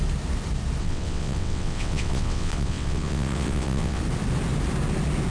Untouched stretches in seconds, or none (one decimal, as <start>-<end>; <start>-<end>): 0.0-0.8; 4.0-5.3